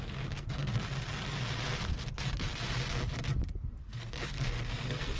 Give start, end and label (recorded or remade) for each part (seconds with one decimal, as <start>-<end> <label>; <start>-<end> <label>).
0.0-0.7 remade; 0.7-3.8 recorded; 3.8-5.2 remade